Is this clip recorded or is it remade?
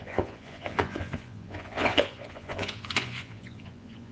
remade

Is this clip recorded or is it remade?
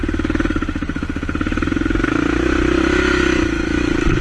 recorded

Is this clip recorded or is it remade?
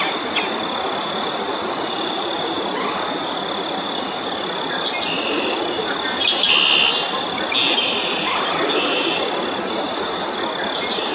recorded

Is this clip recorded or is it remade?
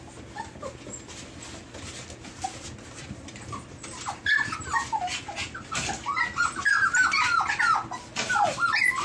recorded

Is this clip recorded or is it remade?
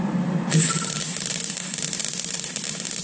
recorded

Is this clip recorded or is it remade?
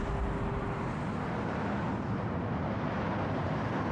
recorded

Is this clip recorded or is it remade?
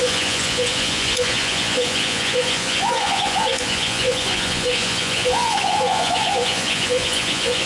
remade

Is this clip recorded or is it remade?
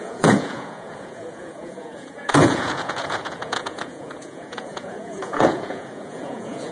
remade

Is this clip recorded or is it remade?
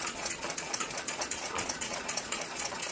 remade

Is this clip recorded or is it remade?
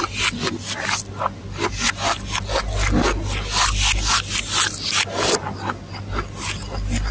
recorded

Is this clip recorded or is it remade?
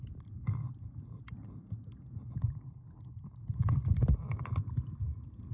recorded